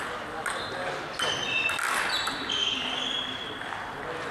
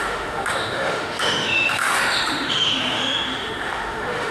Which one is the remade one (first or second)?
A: second